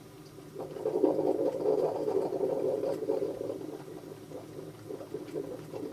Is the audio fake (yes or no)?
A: no